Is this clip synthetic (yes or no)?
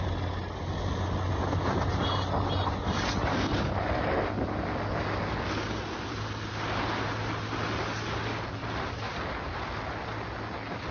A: no